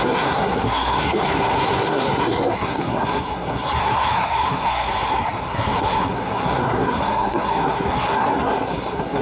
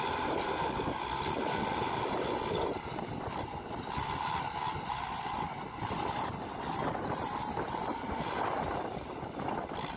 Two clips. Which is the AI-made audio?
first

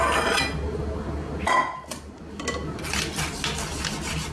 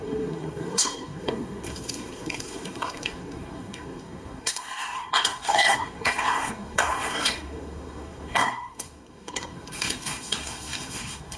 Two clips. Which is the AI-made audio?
second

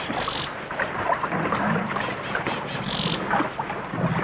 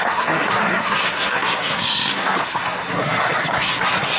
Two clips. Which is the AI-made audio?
second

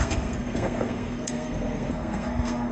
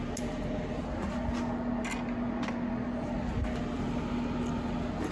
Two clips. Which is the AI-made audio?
first